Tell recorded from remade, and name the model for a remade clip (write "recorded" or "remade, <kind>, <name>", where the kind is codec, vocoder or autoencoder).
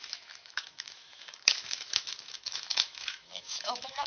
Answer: remade, autoencoder, DAC-VAE